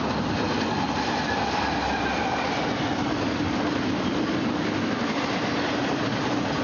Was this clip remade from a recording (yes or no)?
no